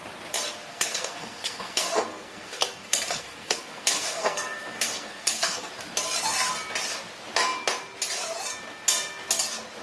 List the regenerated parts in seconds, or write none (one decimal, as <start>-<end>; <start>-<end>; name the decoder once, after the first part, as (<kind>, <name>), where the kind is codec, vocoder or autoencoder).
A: 0.7-5.7 (codec, SNAC)